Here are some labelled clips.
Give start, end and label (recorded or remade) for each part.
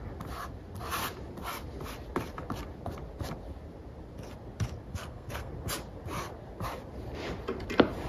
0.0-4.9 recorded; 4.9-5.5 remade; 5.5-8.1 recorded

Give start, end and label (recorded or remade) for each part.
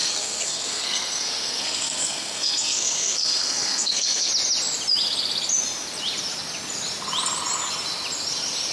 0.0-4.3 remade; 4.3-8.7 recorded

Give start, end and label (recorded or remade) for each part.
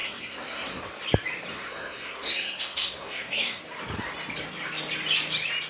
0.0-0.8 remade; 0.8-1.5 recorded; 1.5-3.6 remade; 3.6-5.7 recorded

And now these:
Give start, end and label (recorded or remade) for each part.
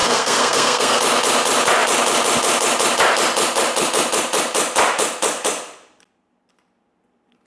0.0-1.0 remade; 1.0-7.5 recorded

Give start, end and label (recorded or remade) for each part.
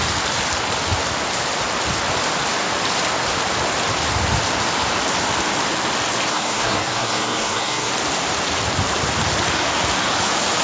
0.0-6.3 recorded; 6.3-7.9 remade; 7.9-10.6 recorded